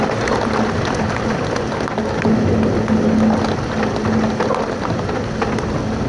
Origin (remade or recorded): recorded